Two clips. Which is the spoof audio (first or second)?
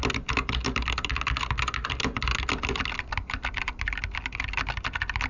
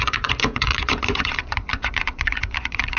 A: second